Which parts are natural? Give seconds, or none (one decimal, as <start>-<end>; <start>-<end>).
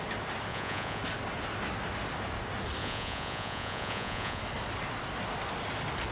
0.0-0.5; 1.0-2.8; 4.4-6.1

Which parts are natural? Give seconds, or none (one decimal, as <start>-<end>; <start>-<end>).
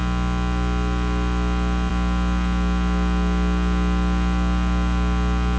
0.0-5.6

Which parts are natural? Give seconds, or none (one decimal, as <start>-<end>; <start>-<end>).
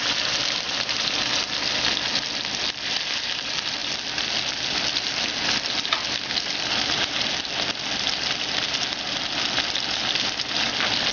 0.0-11.1